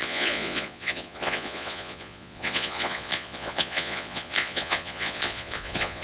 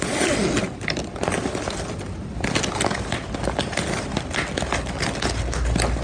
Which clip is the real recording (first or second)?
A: second